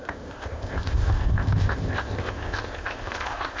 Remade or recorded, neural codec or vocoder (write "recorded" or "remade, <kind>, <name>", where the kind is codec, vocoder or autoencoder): remade, codec, ZipCodec